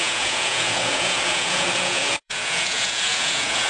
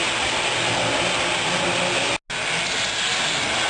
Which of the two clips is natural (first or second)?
second